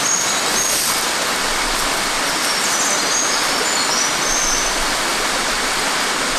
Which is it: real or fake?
real